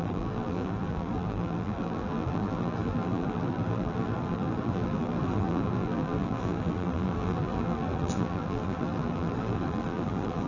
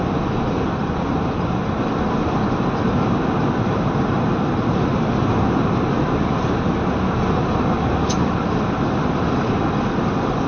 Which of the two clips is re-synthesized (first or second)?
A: first